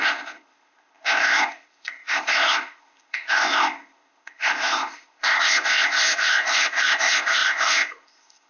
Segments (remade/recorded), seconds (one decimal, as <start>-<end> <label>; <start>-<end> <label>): 0.0-8.5 remade

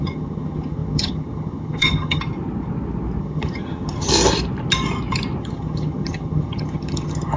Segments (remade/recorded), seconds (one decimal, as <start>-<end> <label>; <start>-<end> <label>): 0.0-2.2 remade; 2.2-3.2 recorded; 3.2-4.1 remade; 4.1-5.4 recorded; 5.4-7.4 remade

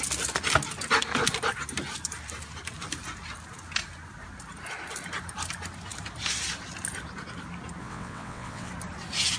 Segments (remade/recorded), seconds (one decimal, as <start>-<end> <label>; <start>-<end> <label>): 0.0-7.8 recorded; 7.8-8.7 remade; 8.7-9.4 recorded

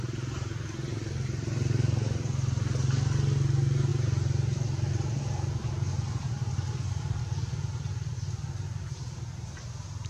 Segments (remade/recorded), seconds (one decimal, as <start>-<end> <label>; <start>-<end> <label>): 0.0-10.1 recorded

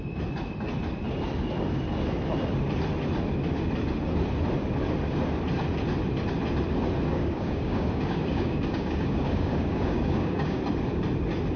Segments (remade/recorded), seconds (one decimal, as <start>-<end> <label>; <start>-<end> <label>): 0.0-7.1 recorded; 7.1-10.6 remade; 10.6-11.6 recorded

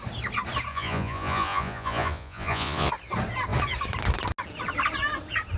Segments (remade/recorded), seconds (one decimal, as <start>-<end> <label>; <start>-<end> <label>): 0.0-0.7 recorded; 0.7-2.9 remade; 2.9-5.6 recorded